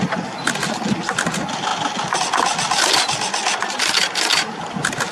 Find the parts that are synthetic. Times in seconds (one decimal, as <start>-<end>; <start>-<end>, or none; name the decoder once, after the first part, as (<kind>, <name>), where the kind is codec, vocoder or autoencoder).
none